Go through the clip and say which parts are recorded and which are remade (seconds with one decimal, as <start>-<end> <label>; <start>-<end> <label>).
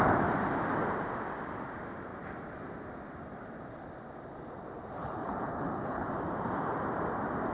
0.0-5.0 recorded; 5.0-6.1 remade; 6.1-7.5 recorded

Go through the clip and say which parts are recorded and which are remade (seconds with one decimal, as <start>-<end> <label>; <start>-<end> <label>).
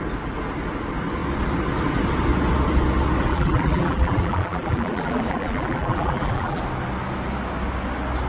0.0-3.3 recorded; 3.3-6.6 remade; 6.6-8.3 recorded